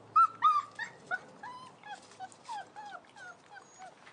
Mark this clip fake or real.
real